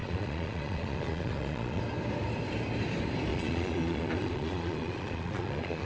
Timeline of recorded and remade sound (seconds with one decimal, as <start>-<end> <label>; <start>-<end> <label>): 0.0-1.8 remade; 1.8-3.3 recorded; 3.3-5.9 remade